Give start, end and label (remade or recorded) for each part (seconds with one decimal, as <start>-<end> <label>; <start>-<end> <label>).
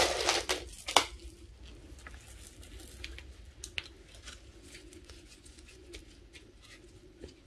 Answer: 0.0-4.5 recorded; 4.5-5.9 remade; 5.9-7.5 recorded